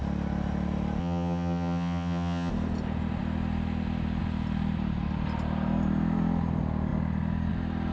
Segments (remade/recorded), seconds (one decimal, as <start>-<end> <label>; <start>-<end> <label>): 0.0-1.0 recorded; 1.0-2.5 remade; 2.5-7.9 recorded